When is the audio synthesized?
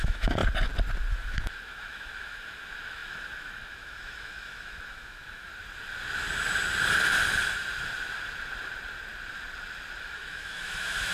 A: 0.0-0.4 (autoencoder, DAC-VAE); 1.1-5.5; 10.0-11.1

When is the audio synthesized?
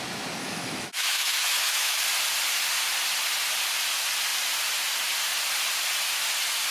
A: 0.4-2.0 (autoencoder, DAC-VAE)